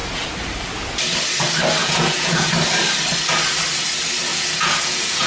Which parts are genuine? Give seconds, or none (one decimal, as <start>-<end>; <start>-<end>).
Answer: 0.0-1.8; 2.5-4.3